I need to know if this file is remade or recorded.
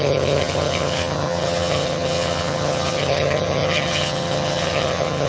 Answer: remade